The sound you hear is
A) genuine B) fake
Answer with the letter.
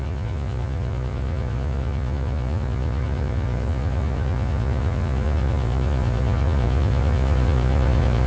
B